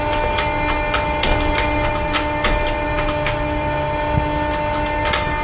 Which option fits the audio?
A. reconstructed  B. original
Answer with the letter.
B